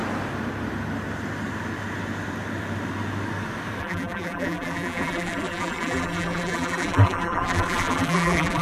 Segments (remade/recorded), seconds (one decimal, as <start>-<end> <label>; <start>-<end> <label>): 0.0-3.8 recorded; 3.8-8.6 remade